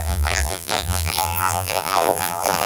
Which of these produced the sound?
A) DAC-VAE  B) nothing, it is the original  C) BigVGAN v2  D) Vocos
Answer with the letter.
C